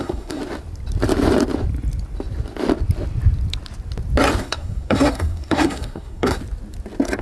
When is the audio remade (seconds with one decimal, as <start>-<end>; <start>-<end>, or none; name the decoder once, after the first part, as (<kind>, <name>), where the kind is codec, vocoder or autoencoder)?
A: 0.0-0.4 (codec, SNAC); 4.4-6.4